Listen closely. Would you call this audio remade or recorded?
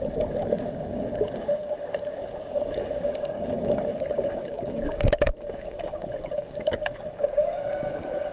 remade